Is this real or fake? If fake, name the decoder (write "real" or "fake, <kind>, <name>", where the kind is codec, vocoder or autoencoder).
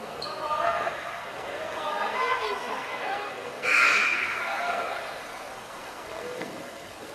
fake, codec, SNAC